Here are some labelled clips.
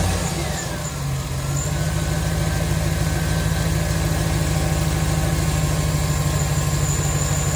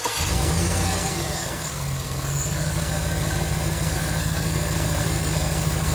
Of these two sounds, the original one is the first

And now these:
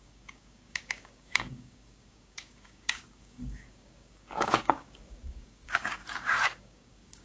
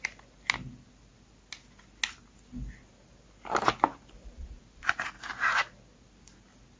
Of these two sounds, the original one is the second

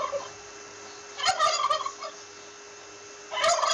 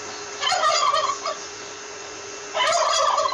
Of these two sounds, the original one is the first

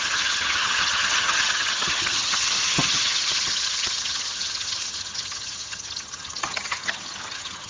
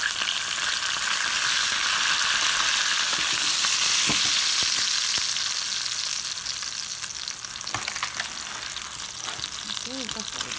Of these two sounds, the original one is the second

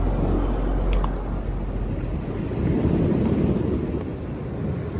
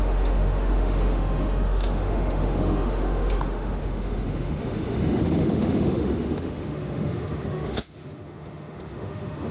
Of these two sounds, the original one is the first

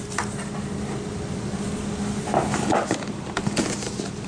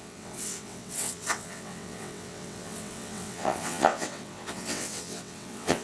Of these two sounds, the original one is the first